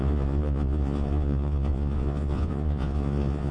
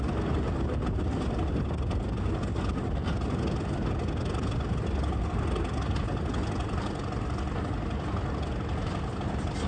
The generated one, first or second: first